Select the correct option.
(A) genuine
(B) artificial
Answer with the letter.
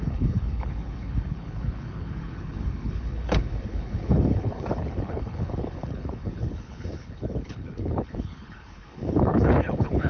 B